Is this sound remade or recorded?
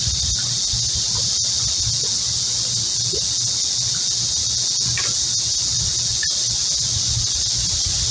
recorded